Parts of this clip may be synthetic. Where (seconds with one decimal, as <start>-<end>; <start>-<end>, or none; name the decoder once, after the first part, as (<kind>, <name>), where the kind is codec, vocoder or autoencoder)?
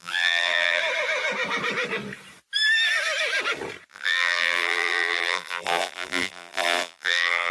0.0-0.8 (vocoder, BigVGAN v2); 3.9-7.5